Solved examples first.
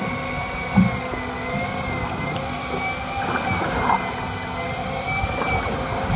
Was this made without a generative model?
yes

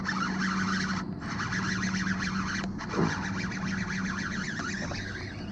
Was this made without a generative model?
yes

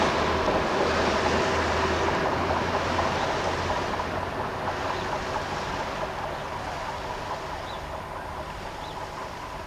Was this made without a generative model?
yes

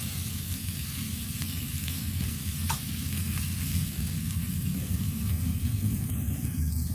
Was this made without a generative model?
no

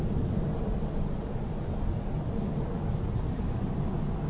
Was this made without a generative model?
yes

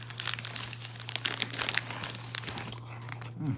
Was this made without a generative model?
yes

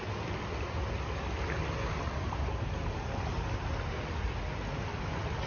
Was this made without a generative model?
yes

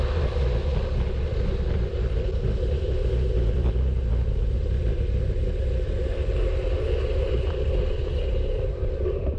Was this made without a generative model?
yes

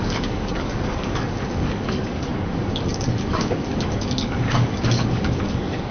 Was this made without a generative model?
no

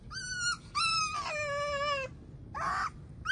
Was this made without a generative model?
yes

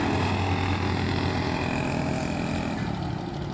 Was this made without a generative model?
yes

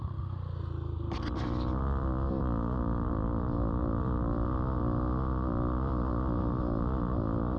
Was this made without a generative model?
yes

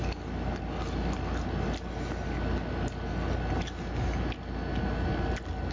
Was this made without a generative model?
yes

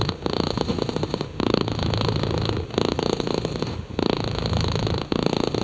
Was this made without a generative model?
no